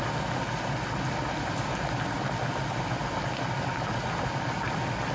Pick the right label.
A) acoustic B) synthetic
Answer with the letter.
A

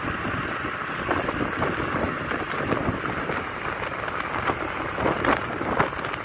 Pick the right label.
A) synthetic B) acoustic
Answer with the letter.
B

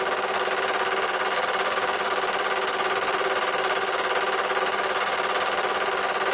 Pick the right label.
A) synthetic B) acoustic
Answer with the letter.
B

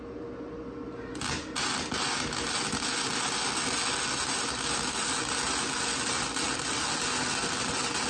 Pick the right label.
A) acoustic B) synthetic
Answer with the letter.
A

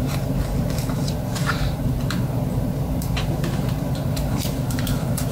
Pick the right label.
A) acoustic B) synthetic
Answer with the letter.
B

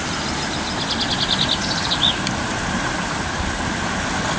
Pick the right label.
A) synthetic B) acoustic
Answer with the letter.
B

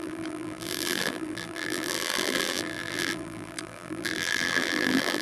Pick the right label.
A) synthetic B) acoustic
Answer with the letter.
A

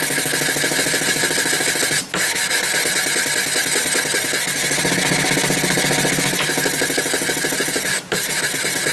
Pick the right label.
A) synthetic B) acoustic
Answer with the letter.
B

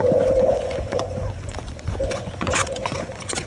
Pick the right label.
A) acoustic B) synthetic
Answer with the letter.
B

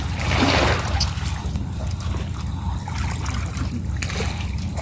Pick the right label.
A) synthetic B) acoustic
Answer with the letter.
B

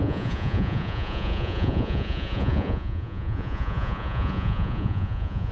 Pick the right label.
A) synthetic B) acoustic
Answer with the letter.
A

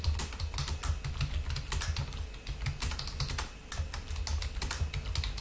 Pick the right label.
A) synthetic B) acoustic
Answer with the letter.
B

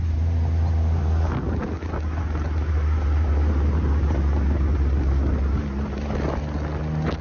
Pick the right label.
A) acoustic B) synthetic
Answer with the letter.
A